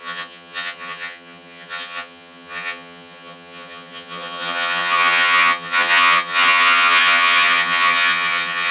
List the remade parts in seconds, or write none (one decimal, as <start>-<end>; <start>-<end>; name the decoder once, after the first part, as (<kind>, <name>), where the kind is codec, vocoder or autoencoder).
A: 0.0-8.7 (vocoder, HiFi-GAN)